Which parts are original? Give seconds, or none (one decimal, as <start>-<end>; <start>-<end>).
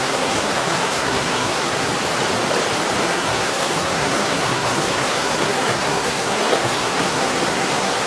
1.9-3.0